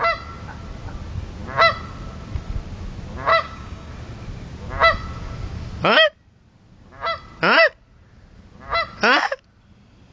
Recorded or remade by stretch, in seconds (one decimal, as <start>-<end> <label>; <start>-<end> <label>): 0.0-3.3 recorded; 3.3-3.9 remade; 3.9-10.1 recorded